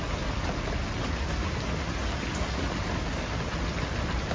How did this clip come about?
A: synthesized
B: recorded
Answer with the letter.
B